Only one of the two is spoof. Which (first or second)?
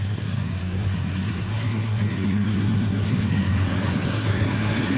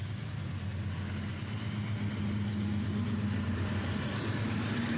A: first